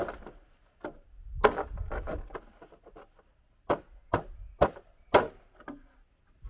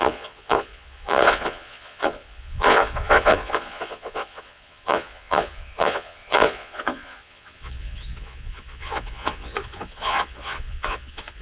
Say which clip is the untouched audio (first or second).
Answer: first